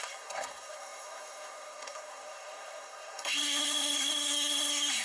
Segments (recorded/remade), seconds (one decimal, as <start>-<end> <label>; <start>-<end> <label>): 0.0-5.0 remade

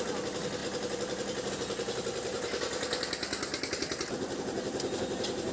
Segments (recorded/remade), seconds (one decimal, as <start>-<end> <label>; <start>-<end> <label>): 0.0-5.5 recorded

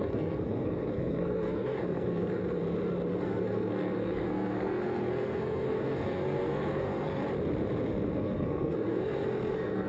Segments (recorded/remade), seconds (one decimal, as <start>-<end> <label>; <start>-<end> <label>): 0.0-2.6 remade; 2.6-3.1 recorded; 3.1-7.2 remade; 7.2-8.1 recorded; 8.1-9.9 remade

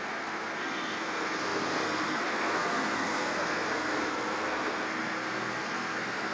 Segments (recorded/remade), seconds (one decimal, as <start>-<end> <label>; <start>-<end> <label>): 0.0-6.3 remade

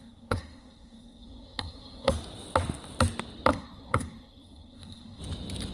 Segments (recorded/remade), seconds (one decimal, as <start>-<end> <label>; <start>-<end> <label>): 0.0-2.1 remade; 2.1-3.5 recorded; 3.5-5.2 remade; 5.2-5.7 recorded

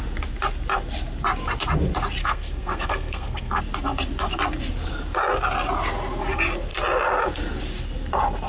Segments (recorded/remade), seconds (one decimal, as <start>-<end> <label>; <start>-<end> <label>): 0.0-2.2 recorded; 2.2-3.6 remade; 3.6-8.5 recorded